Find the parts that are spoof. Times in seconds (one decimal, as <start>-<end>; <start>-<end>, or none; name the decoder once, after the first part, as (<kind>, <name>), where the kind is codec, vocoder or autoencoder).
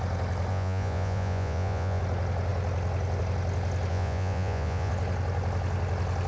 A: 0.5-2.0 (vocoder, Vocos); 3.9-4.9